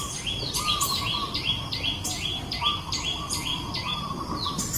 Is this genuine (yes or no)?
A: yes